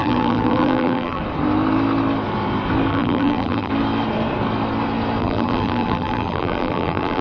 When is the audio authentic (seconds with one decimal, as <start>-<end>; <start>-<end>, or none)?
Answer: 1.2-2.9; 3.7-5.2